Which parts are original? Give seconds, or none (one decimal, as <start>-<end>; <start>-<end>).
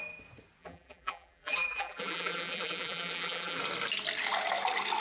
0.0-0.6; 3.6-5.0